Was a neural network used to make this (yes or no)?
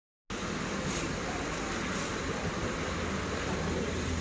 no